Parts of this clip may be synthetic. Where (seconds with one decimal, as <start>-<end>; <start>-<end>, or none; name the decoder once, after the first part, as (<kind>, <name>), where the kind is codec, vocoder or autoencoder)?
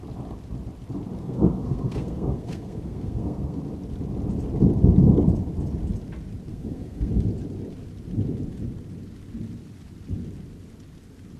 1.2-3.6 (codec, SNAC); 6.5-7.1